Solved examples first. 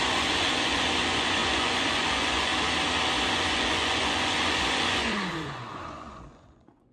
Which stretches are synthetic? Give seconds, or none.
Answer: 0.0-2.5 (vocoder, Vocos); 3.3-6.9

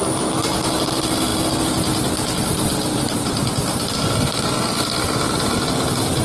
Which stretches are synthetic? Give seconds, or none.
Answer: none

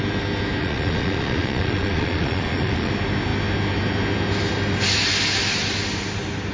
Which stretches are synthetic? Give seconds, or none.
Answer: 0.6-2.9 (vocoder, Vocos)

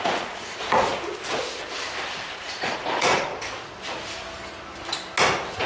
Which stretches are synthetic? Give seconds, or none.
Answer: 0.0-0.9 (vocoder, Vocos); 2.4-3.3

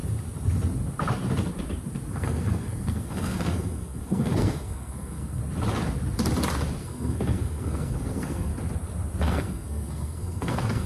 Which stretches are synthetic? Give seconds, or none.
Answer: 2.1-5.4 (codec, SNAC); 6.8-8.5; 9.2-10.9

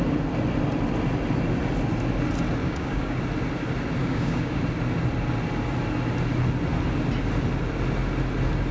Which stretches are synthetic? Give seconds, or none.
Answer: 2.6-3.2 (codec, DAC); 4.0-4.6

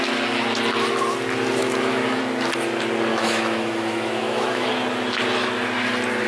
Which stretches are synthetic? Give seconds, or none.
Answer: 1.6-2.2 (autoencoder, DAC-VAE); 3.1-4.7